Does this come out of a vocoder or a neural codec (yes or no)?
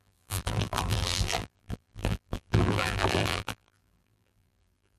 yes